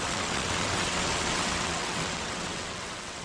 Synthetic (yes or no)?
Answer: yes